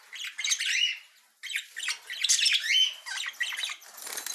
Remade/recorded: recorded